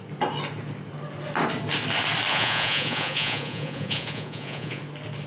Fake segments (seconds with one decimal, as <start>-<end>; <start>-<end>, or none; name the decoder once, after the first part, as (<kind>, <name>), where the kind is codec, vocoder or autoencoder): 2.3-4.8 (vocoder, Vocos)